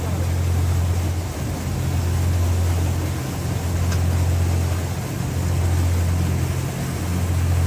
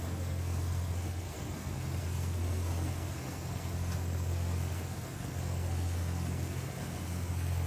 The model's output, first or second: second